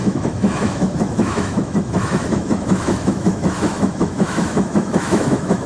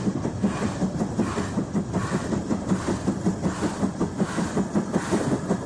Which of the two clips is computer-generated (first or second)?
first